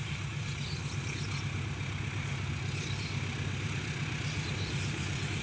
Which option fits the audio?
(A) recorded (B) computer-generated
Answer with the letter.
A